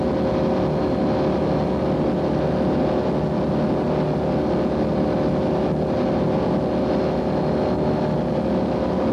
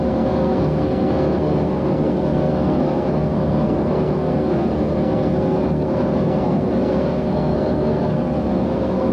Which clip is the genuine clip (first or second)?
first